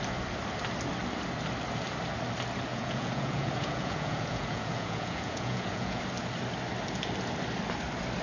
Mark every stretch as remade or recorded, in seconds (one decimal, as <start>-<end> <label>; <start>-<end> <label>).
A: 0.0-2.7 recorded; 2.7-6.0 remade; 6.0-8.2 recorded